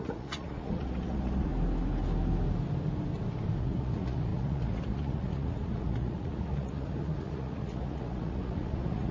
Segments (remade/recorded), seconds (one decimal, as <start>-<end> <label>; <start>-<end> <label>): 0.0-1.5 remade; 1.5-3.6 recorded; 3.6-9.1 remade